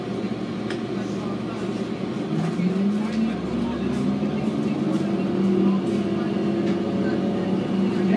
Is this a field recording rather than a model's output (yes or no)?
yes